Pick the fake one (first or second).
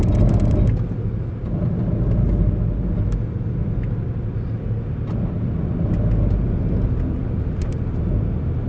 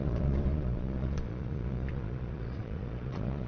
second